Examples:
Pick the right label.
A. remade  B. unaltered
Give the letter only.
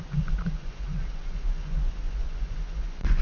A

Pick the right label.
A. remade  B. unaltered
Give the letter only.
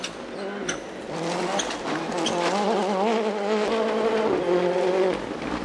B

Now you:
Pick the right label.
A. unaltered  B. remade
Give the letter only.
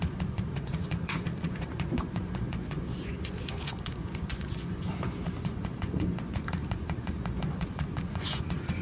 B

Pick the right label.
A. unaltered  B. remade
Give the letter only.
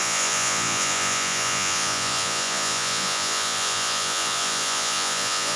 B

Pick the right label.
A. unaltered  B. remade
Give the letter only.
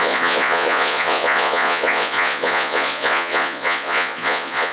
B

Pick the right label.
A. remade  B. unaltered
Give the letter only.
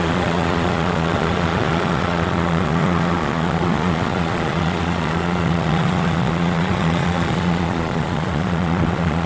A